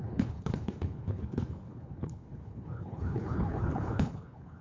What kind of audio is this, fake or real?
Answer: fake